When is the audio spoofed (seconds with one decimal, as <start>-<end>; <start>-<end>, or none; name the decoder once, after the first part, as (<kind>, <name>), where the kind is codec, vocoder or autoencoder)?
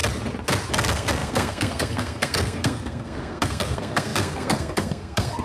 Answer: 0.7-5.4 (codec, SNAC)